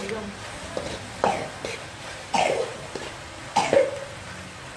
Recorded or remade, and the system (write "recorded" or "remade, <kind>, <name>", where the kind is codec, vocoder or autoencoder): recorded